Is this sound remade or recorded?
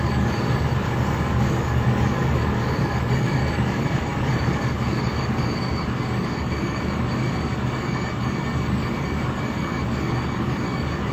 remade